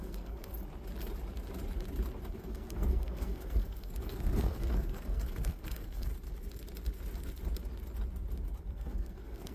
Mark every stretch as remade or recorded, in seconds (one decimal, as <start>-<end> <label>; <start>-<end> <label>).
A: 0.0-0.5 remade; 0.5-2.4 recorded; 2.4-6.1 remade; 6.1-8.6 recorded; 8.6-9.5 remade